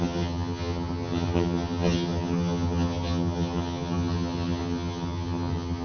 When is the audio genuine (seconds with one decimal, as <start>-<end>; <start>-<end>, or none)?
none

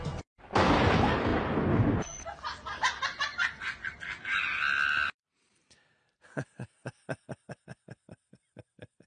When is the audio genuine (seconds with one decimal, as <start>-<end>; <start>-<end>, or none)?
0.0-9.1